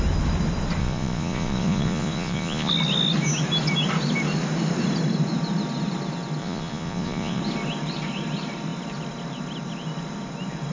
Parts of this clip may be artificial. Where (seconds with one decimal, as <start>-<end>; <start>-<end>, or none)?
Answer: 0.8-2.7; 6.4-7.4